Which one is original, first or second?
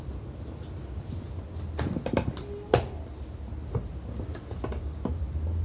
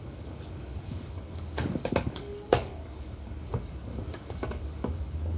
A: first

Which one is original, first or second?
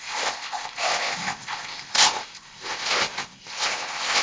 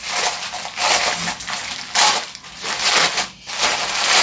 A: second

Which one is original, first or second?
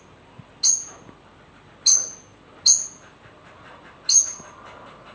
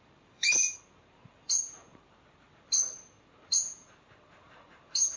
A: first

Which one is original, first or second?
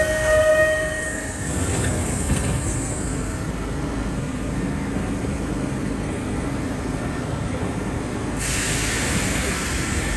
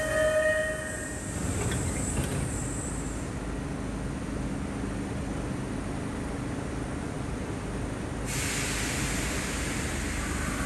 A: second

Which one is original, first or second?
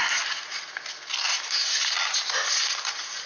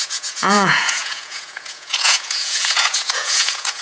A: first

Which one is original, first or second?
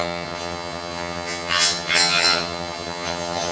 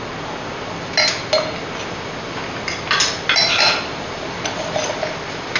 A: second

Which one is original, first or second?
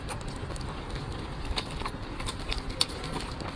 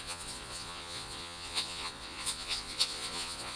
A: first